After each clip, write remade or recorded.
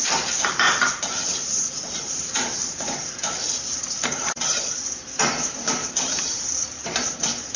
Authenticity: remade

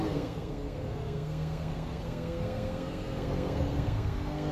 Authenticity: remade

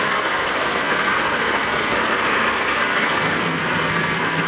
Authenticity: remade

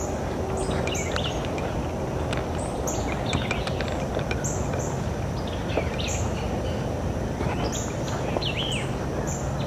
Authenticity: recorded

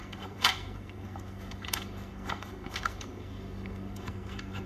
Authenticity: remade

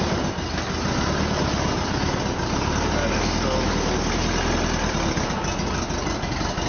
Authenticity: recorded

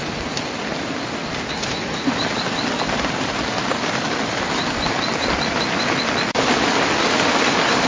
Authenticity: recorded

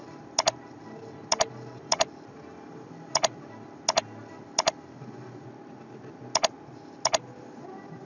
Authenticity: recorded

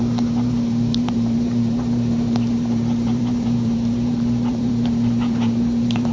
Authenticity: remade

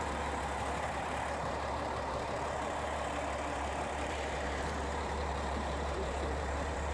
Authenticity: remade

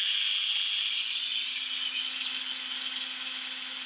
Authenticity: recorded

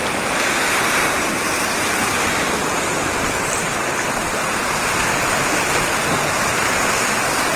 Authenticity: recorded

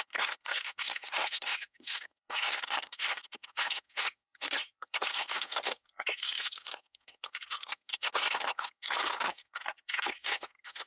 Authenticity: remade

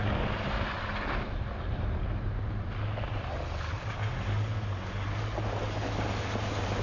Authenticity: recorded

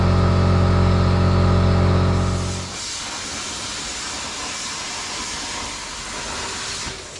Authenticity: recorded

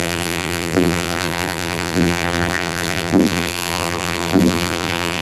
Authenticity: remade